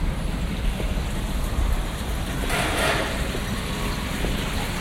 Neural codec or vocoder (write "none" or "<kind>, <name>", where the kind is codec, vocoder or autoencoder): none